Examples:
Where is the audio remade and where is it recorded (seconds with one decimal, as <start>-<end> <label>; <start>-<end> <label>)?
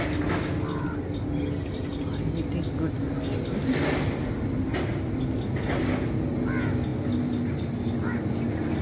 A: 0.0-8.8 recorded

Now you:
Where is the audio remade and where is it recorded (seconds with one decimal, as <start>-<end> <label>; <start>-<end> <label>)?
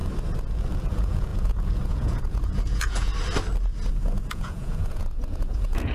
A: 0.0-0.8 recorded; 0.8-3.1 remade; 3.1-3.9 recorded; 3.9-5.9 remade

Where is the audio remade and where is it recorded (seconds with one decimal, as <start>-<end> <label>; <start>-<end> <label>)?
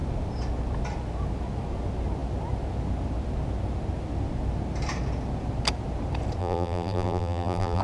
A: 0.0-6.4 recorded; 6.4-7.8 remade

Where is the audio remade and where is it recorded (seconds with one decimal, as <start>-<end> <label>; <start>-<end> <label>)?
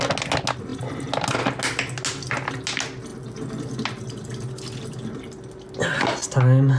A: 0.0-6.8 recorded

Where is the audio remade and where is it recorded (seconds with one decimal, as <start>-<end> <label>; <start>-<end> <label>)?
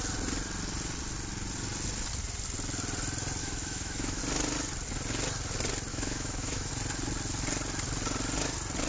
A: 0.0-3.4 recorded; 3.4-4.2 remade; 4.2-5.9 recorded; 5.9-6.7 remade; 6.7-8.9 recorded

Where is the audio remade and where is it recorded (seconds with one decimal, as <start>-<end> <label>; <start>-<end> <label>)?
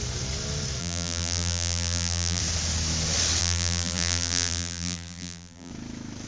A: 0.0-0.8 recorded; 0.8-2.4 remade; 2.4-3.4 recorded; 3.4-5.7 remade; 5.7-6.3 recorded